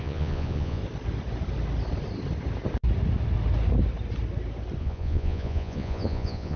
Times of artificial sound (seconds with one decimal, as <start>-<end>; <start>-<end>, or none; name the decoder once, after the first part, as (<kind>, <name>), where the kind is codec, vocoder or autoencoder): 0.0-0.8 (vocoder, Vocos); 4.8-6.6